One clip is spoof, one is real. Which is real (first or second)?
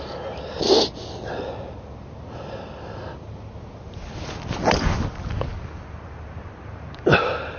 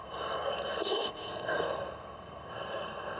first